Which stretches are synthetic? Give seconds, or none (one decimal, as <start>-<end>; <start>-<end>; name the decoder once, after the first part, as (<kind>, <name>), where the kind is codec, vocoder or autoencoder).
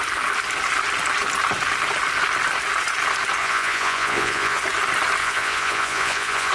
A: 3.4-4.6 (vocoder, Vocos); 5.2-6.5